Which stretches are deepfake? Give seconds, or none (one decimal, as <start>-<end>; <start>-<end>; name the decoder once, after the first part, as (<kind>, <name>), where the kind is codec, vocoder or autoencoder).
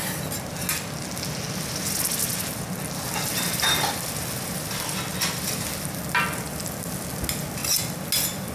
none